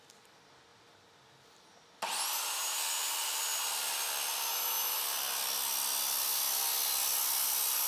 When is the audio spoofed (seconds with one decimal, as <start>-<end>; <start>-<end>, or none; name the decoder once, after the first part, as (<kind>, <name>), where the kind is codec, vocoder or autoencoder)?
4.5-5.0 (autoencoder, DAC-VAE)